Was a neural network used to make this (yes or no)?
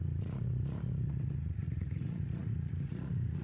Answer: yes